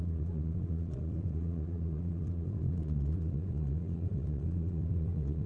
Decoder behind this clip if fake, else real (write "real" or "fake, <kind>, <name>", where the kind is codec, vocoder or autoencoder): fake, vocoder, Vocos